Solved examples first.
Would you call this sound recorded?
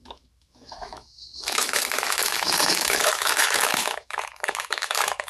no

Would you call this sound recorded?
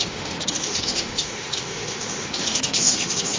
no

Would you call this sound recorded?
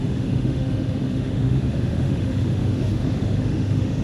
no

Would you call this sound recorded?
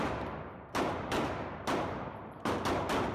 yes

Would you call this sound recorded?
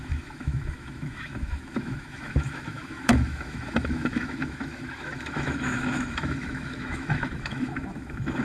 no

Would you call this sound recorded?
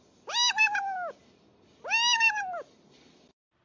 yes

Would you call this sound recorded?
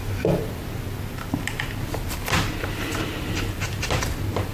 yes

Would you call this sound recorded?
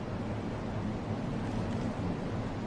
yes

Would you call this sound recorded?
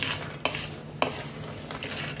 yes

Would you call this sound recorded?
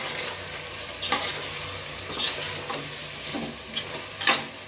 yes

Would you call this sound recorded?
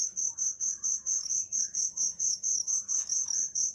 no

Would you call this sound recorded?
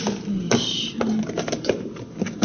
yes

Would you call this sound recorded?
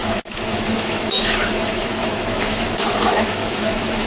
no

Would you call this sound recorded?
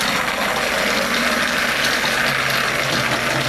yes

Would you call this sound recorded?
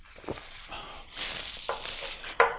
yes